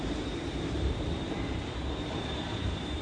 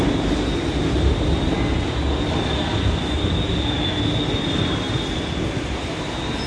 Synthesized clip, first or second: first